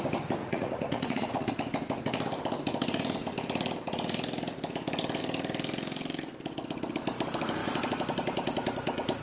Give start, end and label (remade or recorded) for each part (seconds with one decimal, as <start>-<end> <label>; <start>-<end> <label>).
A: 0.0-0.4 recorded; 0.4-1.5 remade; 1.5-9.2 recorded